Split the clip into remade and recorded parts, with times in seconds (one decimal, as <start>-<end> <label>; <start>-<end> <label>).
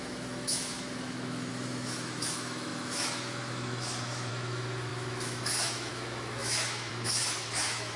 0.0-8.0 remade